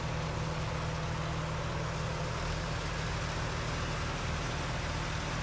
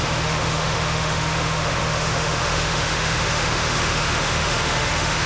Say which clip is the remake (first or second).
second